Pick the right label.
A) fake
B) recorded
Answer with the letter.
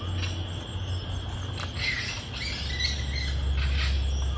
B